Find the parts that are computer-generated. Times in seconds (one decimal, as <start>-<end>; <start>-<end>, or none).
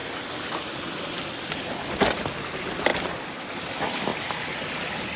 none